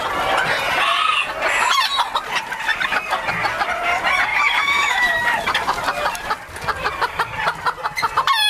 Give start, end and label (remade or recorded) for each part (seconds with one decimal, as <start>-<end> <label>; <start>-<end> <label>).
0.0-4.3 recorded; 4.3-5.2 remade; 5.2-8.5 recorded